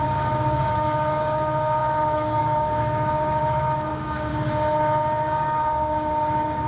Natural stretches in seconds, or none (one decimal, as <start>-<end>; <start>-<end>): 3.4-3.9; 4.3-5.0